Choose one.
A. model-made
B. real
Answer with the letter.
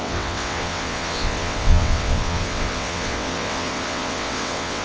A